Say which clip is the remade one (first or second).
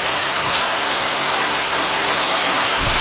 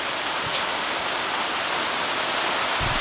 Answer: first